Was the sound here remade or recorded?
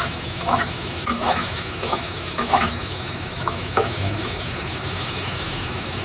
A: remade